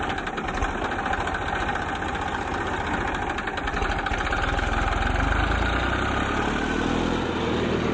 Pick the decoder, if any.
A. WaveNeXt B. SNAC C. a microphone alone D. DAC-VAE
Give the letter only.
C